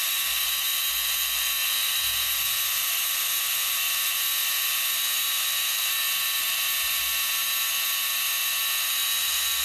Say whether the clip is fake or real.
real